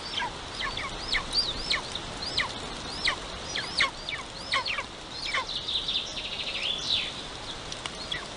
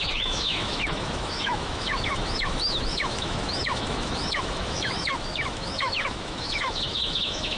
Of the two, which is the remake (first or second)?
second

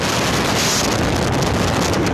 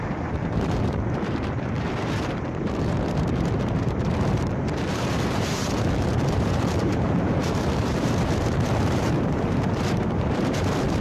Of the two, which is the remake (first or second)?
second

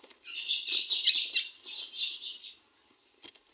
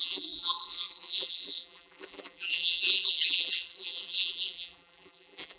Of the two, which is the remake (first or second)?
second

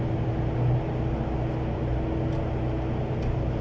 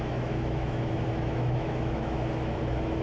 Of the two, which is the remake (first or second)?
second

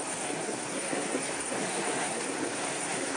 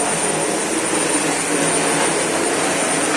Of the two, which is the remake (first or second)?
first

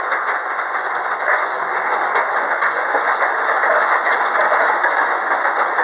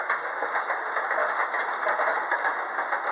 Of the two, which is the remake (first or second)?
first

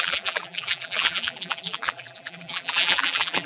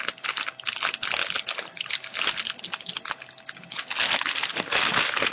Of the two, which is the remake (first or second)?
first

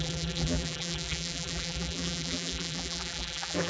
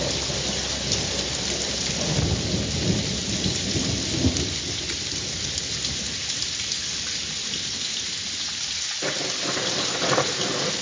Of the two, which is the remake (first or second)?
first